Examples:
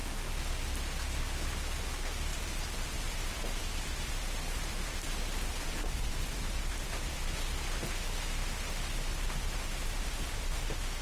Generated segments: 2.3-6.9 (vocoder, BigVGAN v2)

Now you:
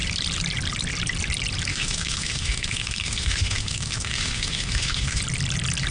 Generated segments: 1.7-5.2 (autoencoder, DAC-VAE)

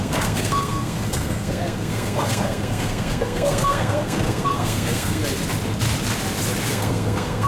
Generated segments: 0.0-5.2 (codec, SNAC); 6.7-7.5